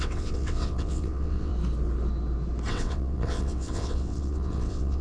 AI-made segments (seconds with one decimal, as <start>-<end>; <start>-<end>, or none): 0.0-1.5; 2.7-5.0